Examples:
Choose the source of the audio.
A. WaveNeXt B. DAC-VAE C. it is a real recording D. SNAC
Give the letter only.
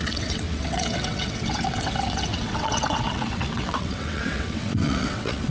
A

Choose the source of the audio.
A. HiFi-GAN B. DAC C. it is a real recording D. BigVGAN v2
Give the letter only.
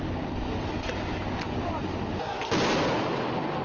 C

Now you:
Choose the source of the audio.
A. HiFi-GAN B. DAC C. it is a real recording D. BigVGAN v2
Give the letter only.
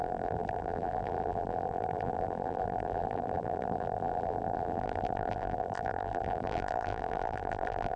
D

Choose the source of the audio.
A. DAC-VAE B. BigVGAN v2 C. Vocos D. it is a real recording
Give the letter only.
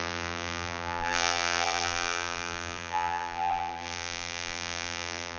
B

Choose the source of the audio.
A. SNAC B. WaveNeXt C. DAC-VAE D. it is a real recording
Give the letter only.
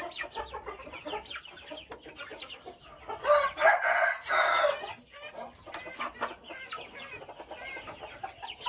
D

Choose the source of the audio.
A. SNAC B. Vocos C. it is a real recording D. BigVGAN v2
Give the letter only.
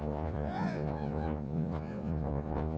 B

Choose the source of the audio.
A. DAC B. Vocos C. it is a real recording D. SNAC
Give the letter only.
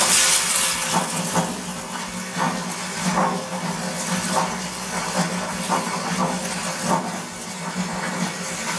C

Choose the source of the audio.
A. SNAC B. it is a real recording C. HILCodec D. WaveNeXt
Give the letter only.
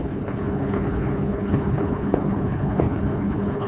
C